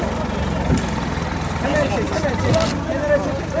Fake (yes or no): no